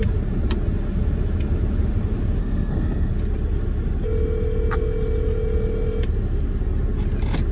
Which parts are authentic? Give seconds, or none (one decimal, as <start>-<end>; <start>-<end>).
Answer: 0.0-2.4; 3.1-7.5